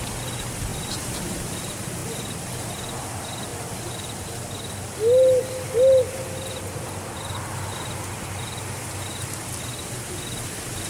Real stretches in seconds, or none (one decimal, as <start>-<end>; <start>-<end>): 0.0-0.7; 1.6-10.9

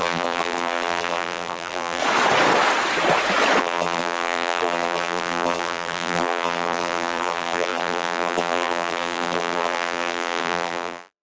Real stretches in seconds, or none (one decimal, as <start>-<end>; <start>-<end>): 2.0-3.6

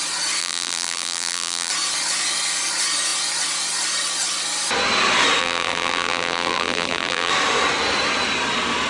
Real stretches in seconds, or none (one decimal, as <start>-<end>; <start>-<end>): 0.0-0.4; 1.7-5.4; 7.3-8.9